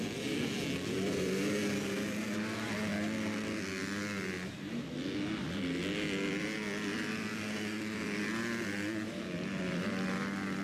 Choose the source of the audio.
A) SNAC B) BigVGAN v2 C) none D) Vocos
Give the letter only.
C